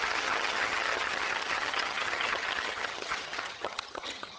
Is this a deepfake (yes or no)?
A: yes